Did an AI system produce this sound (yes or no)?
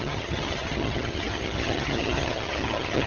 yes